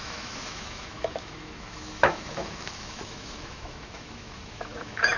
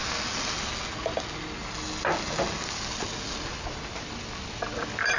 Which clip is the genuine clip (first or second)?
second